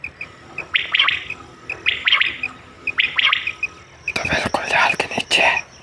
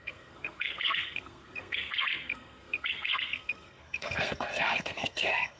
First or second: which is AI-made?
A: second